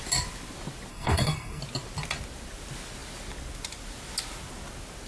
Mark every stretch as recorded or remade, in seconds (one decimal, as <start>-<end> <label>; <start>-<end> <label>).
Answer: 0.0-0.9 recorded; 0.9-1.6 remade; 1.6-5.1 recorded